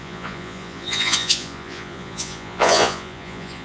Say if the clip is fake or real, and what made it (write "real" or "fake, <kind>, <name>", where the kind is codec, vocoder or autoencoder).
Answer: fake, vocoder, Vocos